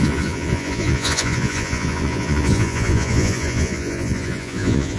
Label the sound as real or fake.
fake